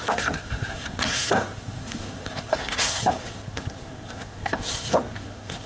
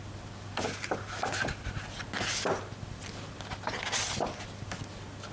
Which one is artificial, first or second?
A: first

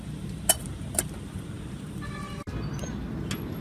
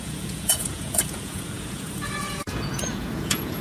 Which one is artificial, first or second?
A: second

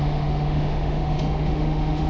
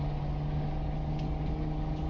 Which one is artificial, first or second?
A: first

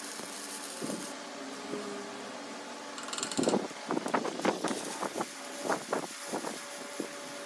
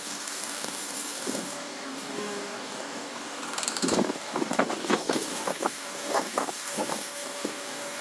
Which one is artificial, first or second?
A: second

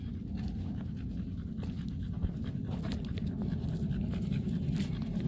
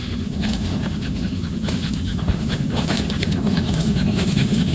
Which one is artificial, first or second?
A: second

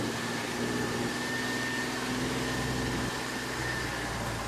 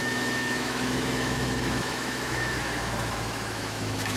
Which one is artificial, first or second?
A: second